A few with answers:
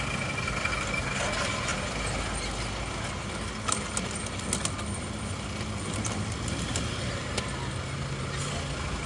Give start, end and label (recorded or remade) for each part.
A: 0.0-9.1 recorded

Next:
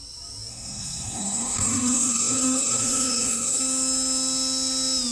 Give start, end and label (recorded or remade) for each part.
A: 0.0-0.5 recorded; 0.5-3.6 remade; 3.6-5.1 recorded

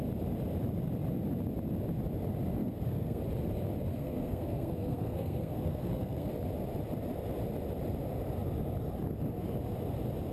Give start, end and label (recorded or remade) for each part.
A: 0.0-2.6 recorded; 2.6-3.2 remade; 3.2-3.9 recorded; 3.9-6.3 remade; 6.3-10.3 recorded

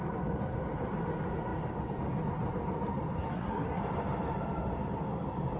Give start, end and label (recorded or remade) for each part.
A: 0.0-3.3 recorded; 3.3-3.8 remade; 3.8-5.6 recorded

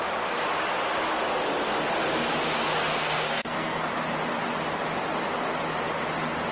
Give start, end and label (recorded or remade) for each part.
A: 0.0-3.0 recorded; 3.0-3.9 remade; 3.9-6.5 recorded

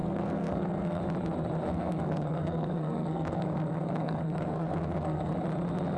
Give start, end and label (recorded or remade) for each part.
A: 0.0-1.0 remade; 1.0-1.7 recorded; 1.7-5.3 remade; 5.3-6.0 recorded

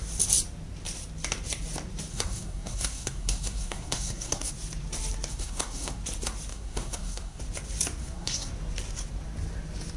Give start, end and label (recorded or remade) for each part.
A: 0.0-2.1 recorded; 2.1-4.5 remade; 4.5-5.3 recorded; 5.3-6.0 remade; 6.0-6.5 recorded; 6.5-7.4 remade; 7.4-8.0 recorded; 8.0-8.5 remade; 8.5-10.0 recorded